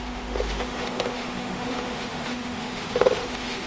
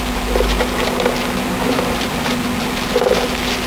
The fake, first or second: first